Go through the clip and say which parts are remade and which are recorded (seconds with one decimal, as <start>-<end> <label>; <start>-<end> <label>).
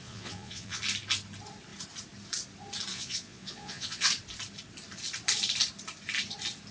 0.0-0.8 remade; 0.8-2.9 recorded; 2.9-4.1 remade; 4.1-6.7 recorded